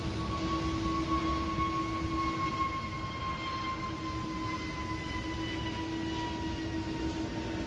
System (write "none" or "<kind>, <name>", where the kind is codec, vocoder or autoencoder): none